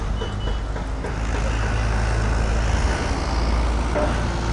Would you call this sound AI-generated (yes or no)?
no